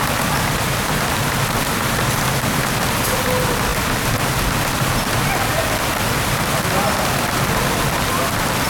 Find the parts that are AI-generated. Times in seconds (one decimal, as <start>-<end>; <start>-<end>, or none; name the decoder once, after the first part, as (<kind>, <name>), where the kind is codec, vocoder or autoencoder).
0.0-3.7 (vocoder, BigVGAN v2); 8.2-8.7

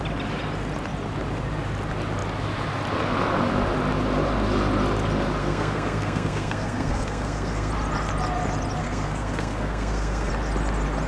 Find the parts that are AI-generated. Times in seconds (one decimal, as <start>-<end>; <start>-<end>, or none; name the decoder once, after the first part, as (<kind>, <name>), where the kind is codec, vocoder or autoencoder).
5.4-7.7 (codec, SNAC); 8.8-10.3